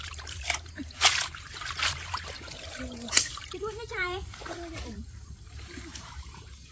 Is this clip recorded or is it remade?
remade